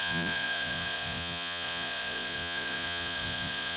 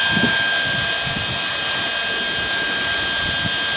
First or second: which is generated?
first